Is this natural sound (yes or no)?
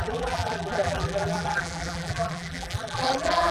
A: no